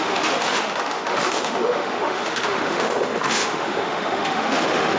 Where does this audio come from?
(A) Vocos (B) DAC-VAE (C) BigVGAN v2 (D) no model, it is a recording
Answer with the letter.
B